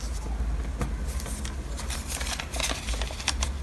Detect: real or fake real